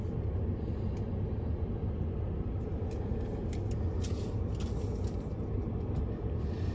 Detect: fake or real real